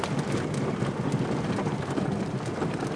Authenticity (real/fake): real